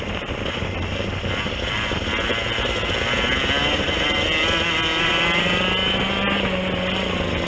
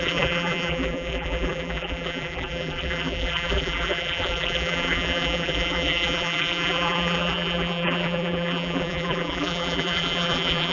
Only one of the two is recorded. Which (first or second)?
first